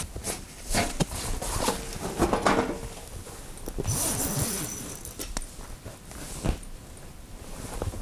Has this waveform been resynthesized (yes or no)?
no